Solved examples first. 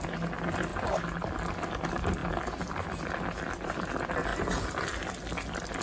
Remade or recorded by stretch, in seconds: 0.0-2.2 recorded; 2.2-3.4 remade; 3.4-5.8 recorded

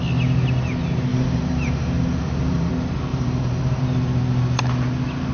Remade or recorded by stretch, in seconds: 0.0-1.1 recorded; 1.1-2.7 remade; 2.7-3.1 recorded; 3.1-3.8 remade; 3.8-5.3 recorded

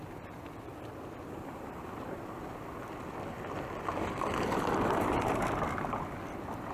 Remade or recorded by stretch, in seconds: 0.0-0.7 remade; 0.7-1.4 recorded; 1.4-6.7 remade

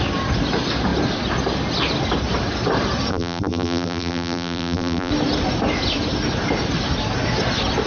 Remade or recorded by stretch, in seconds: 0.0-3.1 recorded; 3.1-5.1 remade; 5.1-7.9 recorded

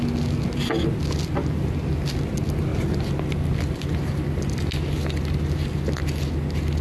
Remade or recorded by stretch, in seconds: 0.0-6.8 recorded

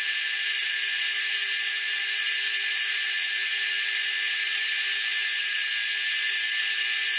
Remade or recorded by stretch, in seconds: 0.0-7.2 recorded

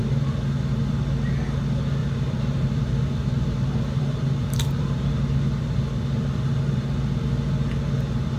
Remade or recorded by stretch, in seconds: 0.0-2.0 recorded; 2.0-5.1 remade; 5.1-8.4 recorded

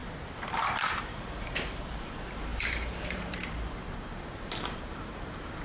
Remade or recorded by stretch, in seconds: 0.0-1.0 recorded; 1.0-5.6 remade